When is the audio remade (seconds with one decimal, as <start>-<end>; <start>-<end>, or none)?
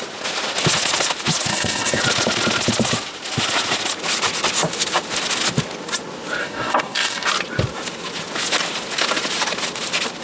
1.5-2.0; 6.4-7.3